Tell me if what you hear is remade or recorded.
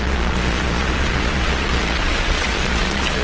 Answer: remade